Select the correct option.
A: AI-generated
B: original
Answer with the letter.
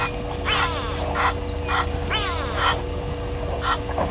B